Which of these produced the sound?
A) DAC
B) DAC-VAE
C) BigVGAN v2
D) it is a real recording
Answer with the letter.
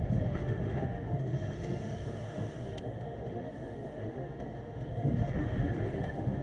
B